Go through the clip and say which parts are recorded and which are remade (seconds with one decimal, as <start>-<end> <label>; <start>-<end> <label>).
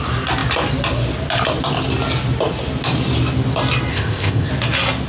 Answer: 0.0-3.9 recorded; 3.9-4.5 remade; 4.5-5.1 recorded